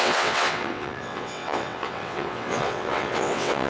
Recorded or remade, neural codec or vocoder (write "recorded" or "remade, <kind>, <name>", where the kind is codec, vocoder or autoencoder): remade, vocoder, WaveNeXt